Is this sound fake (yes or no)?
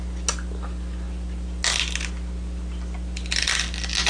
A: no